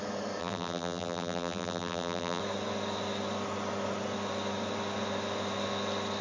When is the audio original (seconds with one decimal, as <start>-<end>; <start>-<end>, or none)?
0.0-0.4; 2.4-6.2